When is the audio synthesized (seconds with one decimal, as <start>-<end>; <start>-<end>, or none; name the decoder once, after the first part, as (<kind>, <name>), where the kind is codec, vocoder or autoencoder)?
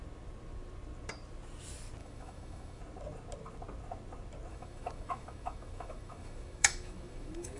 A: 2.0-2.8 (autoencoder, DAC-VAE); 4.5-7.6